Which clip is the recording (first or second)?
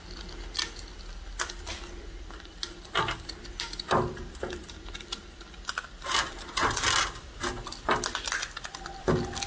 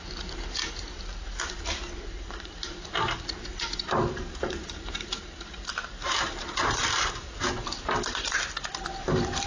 first